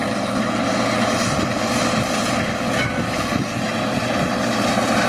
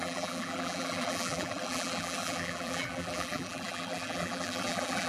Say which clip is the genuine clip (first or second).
first